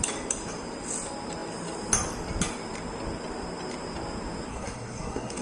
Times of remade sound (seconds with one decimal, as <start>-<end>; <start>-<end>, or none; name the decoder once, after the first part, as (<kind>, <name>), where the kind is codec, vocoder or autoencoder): 4.5-5.4 (codec, SNAC)